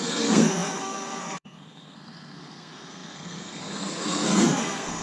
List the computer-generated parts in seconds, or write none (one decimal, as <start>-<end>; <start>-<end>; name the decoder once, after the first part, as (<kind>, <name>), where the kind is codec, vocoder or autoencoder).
0.0-5.0 (codec, SNAC)